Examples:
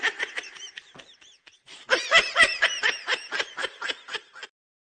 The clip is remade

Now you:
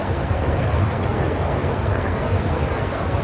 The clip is remade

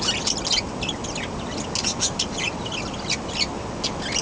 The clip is recorded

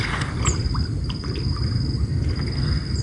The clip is recorded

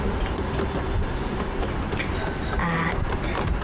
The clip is recorded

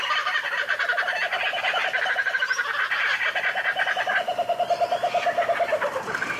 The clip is remade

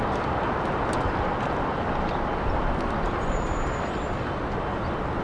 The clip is recorded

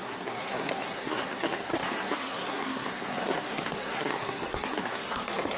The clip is remade